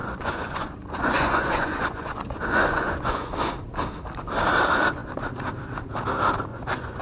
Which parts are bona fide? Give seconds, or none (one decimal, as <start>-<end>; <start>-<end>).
3.3-6.5